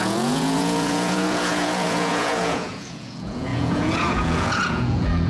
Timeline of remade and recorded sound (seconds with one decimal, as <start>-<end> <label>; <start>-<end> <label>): 0.0-5.3 remade